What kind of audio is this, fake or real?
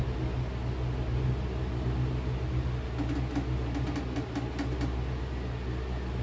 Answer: real